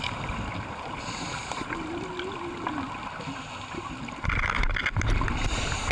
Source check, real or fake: real